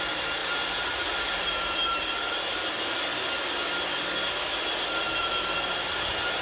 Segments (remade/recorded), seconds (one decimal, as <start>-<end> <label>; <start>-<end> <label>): 0.0-6.4 recorded